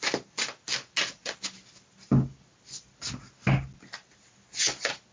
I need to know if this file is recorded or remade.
recorded